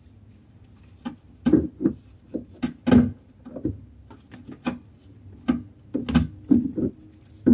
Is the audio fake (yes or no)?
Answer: no